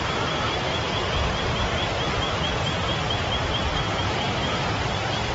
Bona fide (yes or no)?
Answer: yes